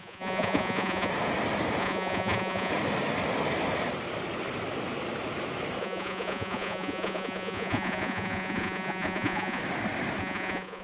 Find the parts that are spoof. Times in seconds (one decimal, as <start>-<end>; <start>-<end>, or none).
0.0-1.1; 1.8-2.7; 5.8-9.6; 10.2-10.8